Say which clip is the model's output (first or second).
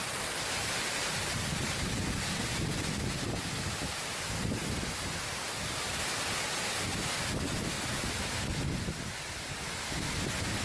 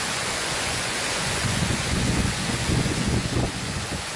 second